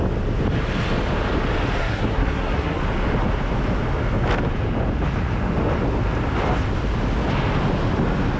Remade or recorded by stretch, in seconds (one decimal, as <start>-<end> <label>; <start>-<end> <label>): 0.0-1.8 recorded; 1.8-2.8 remade; 2.8-8.4 recorded